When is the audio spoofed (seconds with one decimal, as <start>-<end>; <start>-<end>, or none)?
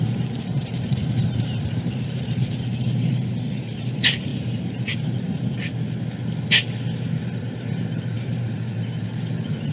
0.0-4.3; 7.4-9.7